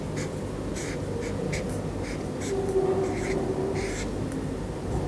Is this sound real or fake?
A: real